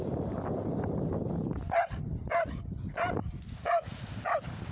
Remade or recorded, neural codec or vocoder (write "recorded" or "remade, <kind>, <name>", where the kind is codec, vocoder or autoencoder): recorded